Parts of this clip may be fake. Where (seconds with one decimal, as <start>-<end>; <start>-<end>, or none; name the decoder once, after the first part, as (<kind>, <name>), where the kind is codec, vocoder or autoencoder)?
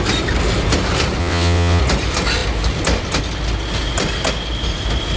1.2-1.8 (vocoder, WaveNeXt)